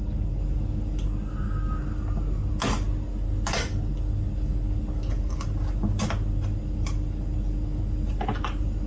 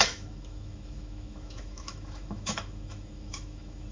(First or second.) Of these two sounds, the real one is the first